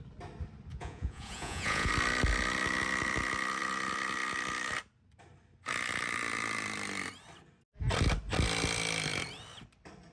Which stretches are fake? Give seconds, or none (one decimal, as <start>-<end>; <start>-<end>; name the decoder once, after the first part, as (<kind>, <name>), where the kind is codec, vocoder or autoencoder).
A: 0.7-1.9 (vocoder, Vocos)